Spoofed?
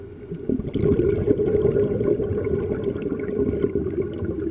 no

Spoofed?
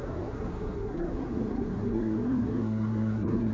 yes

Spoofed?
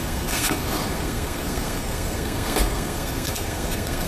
yes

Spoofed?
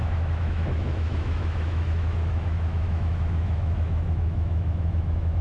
yes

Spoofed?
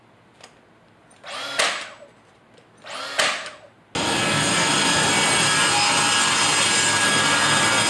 no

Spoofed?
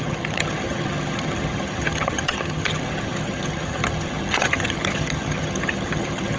yes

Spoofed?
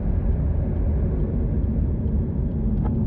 no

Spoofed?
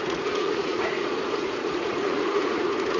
yes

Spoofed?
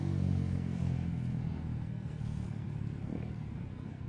yes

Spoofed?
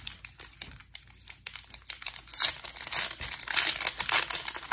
no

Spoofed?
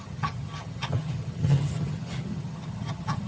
yes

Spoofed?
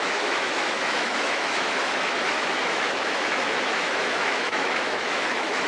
yes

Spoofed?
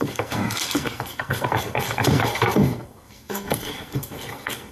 yes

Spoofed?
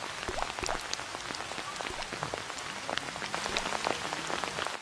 no